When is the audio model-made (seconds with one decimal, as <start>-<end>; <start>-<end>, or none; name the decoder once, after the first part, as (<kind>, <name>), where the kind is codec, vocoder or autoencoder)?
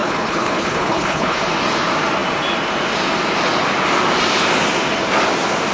0.0-1.4 (codec, HILCodec)